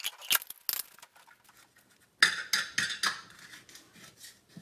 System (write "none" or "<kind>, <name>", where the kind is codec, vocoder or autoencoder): none